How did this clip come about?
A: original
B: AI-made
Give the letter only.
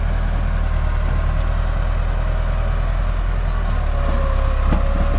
A